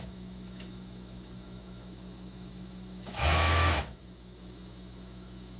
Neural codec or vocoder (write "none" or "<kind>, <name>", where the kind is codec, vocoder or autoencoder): autoencoder, DAC-VAE